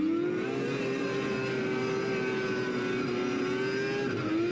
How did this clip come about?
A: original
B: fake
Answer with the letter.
A